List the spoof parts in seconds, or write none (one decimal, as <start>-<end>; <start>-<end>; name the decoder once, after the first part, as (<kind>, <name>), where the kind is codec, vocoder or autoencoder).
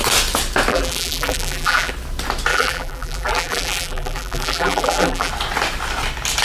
0.7-1.9 (vocoder, BigVGAN v2); 2.5-5.3